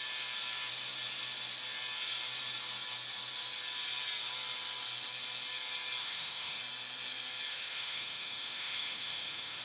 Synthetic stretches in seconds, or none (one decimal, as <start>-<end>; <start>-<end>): 6.0-6.6; 7.5-9.6

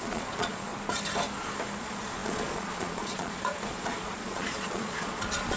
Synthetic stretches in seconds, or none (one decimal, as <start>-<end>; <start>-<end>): 0.0-0.7; 1.8-5.6

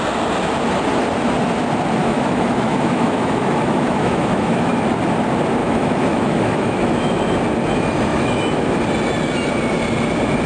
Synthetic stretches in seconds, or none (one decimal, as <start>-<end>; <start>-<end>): 2.0-4.7; 5.6-7.2; 8.1-8.8

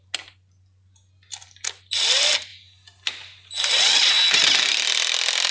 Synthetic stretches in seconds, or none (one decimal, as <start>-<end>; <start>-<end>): none

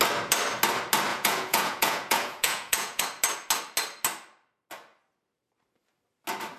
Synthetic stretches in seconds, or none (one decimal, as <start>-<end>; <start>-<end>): 1.1-3.0